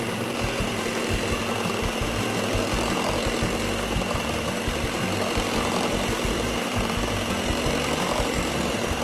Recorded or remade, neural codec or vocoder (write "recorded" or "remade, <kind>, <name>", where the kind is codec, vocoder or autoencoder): remade, vocoder, BigVGAN v2